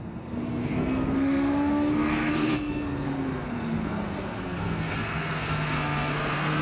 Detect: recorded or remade remade